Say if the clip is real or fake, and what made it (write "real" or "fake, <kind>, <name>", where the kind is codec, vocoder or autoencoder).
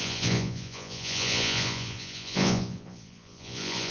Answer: fake, vocoder, Vocos